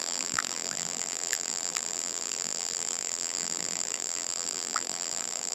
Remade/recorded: remade